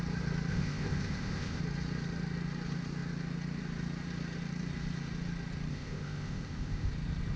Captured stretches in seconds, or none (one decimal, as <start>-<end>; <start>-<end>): 0.0-0.5; 1.6-5.7; 6.9-7.4